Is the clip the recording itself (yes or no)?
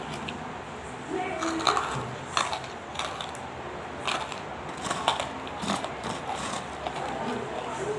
yes